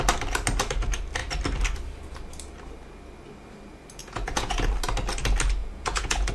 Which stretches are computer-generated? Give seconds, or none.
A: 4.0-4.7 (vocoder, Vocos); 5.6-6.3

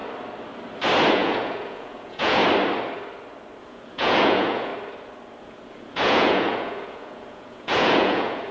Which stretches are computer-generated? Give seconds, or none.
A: 1.1-2.4 (vocoder, Vocos); 3.6-4.7; 5.4-8.5

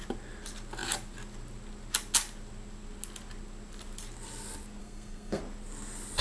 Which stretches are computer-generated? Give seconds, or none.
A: 4.8-5.4 (codec, SNAC)

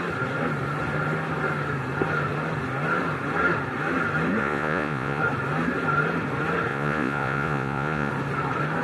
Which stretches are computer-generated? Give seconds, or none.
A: 4.4-5.2 (vocoder, Vocos); 6.7-8.1

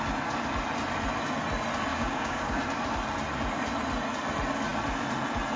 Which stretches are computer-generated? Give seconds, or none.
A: 1.9-2.6 (codec, DAC)

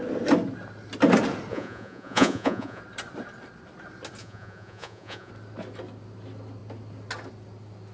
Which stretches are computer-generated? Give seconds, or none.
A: 1.5-2.8 (vocoder, Vocos); 4.2-5.3

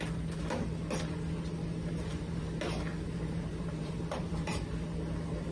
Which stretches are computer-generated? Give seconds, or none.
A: 1.6-2.4 (vocoder, BigVGAN v2); 2.9-4.7